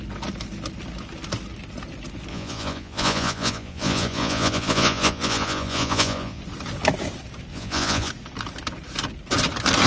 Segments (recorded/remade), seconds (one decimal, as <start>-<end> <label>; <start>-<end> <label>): 0.0-2.3 recorded; 2.3-6.4 remade; 6.4-7.5 recorded; 7.5-8.1 remade; 8.1-9.9 recorded